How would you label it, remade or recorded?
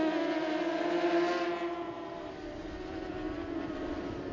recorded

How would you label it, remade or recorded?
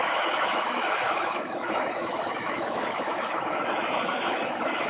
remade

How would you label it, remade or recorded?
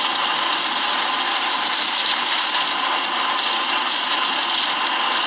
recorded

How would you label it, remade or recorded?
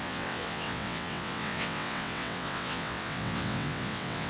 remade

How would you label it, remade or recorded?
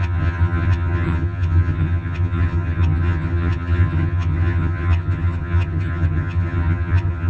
remade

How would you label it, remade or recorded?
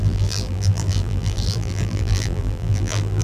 remade